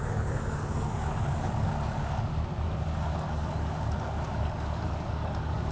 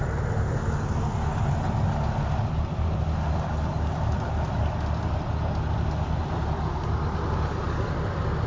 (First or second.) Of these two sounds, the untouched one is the second